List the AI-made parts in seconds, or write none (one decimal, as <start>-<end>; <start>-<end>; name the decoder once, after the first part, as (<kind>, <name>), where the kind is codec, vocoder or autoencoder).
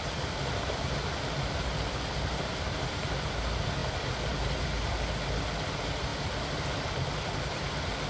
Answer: none